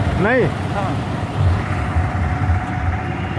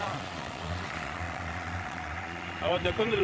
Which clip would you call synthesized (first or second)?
second